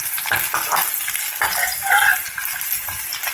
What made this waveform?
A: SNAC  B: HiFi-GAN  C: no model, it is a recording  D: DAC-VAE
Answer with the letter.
C